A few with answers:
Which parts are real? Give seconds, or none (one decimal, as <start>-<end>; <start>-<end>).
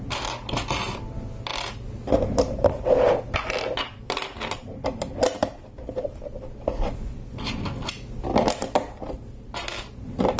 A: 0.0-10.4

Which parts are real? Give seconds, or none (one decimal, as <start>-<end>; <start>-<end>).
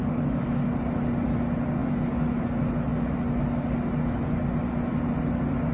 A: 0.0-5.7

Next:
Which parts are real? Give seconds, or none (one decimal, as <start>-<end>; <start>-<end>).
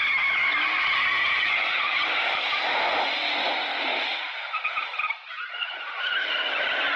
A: 0.0-1.1; 3.0-3.9; 6.1-7.0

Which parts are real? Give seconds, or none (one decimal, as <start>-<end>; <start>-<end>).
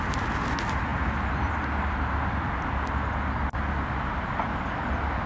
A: 0.0-5.3